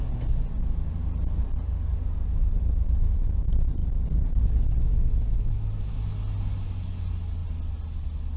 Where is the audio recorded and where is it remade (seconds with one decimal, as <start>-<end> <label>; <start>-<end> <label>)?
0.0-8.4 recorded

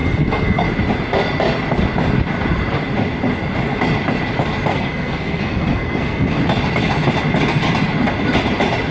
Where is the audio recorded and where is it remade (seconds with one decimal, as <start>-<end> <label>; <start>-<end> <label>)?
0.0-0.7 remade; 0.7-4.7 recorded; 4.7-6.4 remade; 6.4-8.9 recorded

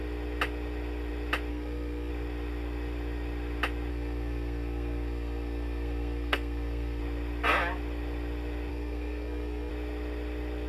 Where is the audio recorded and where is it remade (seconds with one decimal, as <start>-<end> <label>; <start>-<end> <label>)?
0.0-1.5 recorded; 1.5-2.1 remade; 2.1-3.9 recorded; 3.9-7.0 remade; 7.0-8.7 recorded; 8.7-9.7 remade; 9.7-10.7 recorded

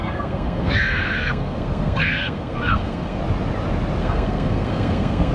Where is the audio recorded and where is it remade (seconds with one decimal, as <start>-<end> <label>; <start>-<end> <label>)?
0.0-3.2 remade; 3.2-4.0 recorded; 4.0-5.3 remade

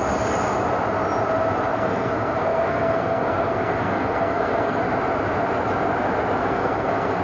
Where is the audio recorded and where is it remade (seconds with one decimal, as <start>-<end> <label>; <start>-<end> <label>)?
0.0-1.7 recorded; 1.7-4.8 remade; 4.8-6.4 recorded; 6.4-7.2 remade